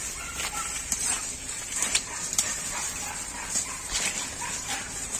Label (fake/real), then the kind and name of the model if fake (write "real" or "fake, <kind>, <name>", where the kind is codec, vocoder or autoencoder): real